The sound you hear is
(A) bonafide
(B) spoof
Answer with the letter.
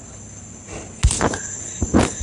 A